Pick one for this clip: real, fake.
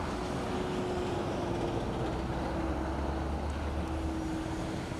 real